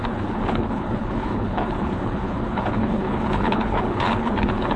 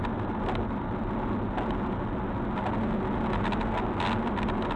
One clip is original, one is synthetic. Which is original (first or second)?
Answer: second